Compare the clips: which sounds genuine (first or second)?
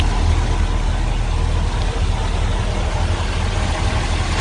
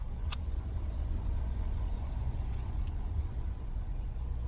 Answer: first